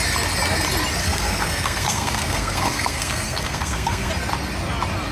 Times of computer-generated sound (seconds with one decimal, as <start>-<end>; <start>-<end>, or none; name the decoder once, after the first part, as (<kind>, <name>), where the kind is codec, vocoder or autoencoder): 1.0-4.1 (codec, SNAC)